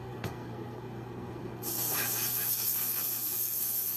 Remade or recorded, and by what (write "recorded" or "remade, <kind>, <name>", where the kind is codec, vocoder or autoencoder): remade, codec, SNAC